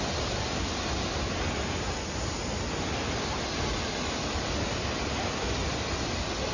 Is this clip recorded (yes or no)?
yes